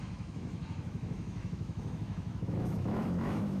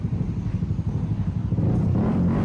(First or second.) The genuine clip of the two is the second